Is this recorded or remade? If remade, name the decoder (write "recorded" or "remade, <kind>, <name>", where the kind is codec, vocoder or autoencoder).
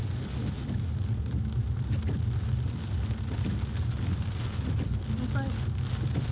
recorded